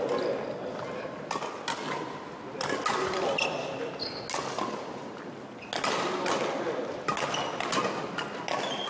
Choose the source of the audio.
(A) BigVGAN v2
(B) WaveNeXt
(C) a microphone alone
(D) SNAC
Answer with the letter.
C